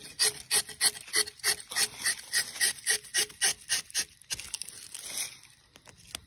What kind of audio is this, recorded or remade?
recorded